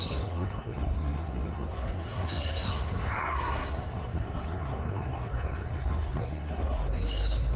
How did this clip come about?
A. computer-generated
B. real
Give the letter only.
A